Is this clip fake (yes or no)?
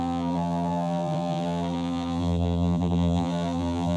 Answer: yes